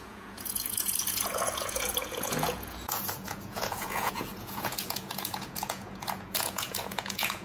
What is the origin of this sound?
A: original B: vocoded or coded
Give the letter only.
B